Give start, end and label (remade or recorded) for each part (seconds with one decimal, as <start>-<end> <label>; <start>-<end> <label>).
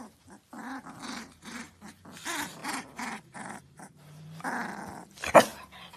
0.0-1.2 recorded; 1.2-1.7 remade; 1.7-2.6 recorded; 2.6-4.4 remade; 4.4-6.0 recorded